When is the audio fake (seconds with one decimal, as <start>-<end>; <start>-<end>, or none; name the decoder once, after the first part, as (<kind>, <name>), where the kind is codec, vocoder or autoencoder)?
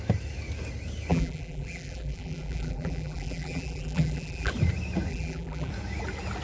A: 1.1-4.5 (vocoder, BigVGAN v2); 5.1-5.7